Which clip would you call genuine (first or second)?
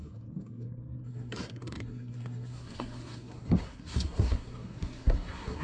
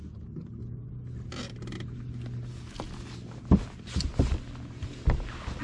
second